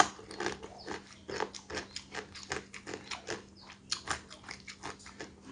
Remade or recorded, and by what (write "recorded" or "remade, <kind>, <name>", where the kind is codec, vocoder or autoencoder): recorded